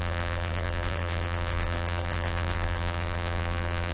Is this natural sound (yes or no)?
no